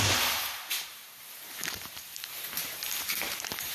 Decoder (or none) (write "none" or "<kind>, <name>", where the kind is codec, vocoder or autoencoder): vocoder, BigVGAN v2